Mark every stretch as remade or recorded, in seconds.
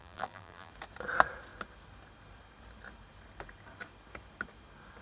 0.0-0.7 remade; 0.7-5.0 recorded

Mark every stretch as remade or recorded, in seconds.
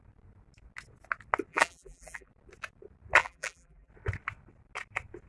0.0-1.5 recorded; 1.5-2.3 remade; 2.3-3.2 recorded; 3.2-3.9 remade; 3.9-5.3 recorded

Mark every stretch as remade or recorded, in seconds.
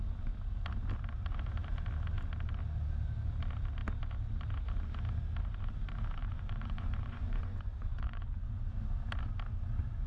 0.0-6.2 recorded; 6.2-8.3 remade; 8.3-10.1 recorded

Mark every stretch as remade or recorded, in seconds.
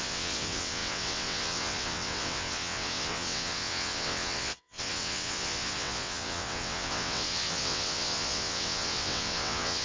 0.0-9.8 remade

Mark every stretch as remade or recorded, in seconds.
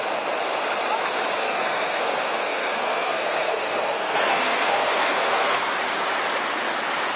0.0-1.4 recorded; 1.4-5.7 remade; 5.7-7.2 recorded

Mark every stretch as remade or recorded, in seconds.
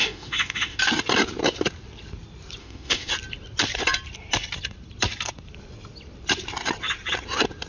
0.0-0.8 remade; 0.8-2.6 recorded; 2.6-3.1 remade; 3.1-7.7 recorded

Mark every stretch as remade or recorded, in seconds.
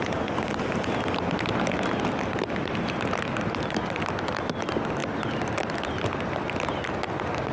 0.0-7.5 recorded